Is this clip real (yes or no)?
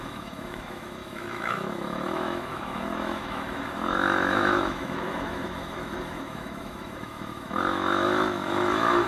no